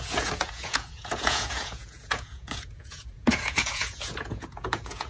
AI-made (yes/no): yes